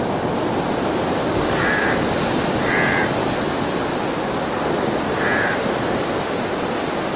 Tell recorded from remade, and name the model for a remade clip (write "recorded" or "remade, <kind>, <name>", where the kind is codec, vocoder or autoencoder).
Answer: recorded